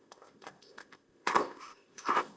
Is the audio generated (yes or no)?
yes